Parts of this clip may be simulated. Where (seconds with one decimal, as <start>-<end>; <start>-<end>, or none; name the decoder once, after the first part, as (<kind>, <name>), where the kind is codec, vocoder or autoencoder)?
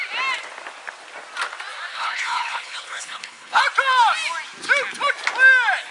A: 1.9-3.6 (codec, HILCodec)